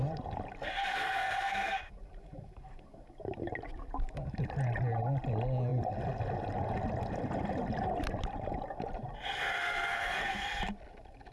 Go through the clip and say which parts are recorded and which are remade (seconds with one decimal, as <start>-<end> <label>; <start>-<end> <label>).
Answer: 0.0-0.7 recorded; 0.7-1.9 remade; 1.9-9.6 recorded; 9.6-10.6 remade; 10.6-11.3 recorded